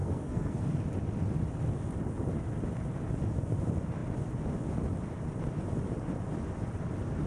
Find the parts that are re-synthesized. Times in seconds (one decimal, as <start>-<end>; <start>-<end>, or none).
0.0-0.6